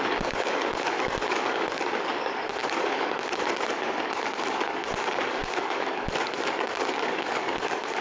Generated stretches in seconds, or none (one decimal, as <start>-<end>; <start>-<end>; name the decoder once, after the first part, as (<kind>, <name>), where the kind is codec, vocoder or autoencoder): 0.0-8.0 (codec, DAC)